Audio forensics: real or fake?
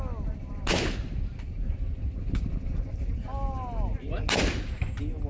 real